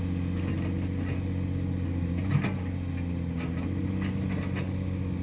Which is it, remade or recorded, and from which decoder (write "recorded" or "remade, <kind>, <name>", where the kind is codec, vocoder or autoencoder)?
recorded